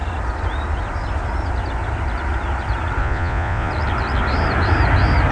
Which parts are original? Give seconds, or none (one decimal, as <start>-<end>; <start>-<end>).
0.0-3.0; 3.7-5.3